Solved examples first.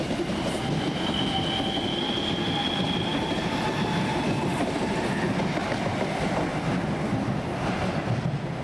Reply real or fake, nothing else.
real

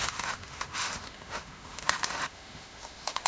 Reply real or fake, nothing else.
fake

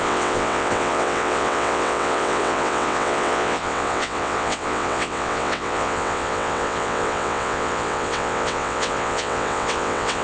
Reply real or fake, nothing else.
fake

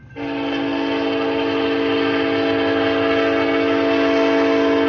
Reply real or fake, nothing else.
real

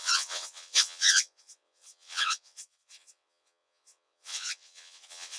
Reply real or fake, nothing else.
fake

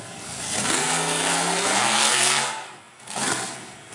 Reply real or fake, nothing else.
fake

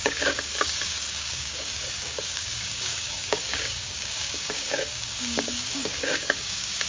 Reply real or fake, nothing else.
fake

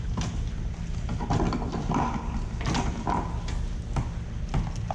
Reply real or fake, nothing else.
real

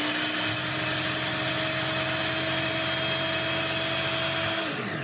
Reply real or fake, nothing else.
real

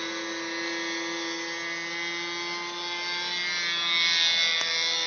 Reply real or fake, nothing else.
real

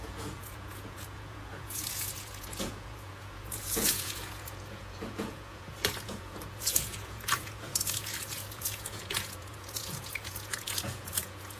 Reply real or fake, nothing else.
fake